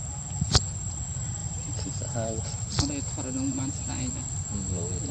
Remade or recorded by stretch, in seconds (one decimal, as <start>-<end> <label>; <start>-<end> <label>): 0.0-1.4 recorded; 1.4-4.1 remade; 4.1-5.1 recorded